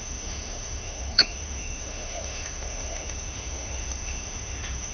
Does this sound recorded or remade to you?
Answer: remade